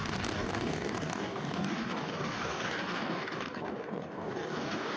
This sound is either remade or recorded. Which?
remade